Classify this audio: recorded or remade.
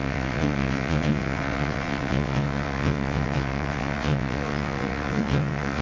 remade